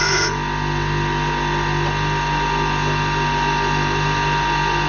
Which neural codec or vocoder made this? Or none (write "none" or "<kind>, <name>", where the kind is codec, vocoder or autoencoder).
none